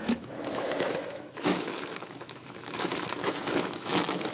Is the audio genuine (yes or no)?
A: no